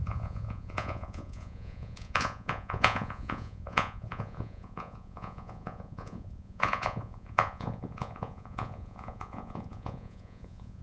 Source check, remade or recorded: remade